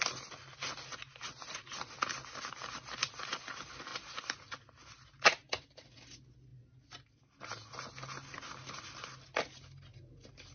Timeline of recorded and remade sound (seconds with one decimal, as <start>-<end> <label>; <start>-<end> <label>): 0.0-10.5 recorded